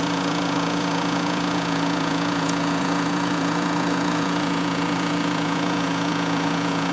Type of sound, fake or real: fake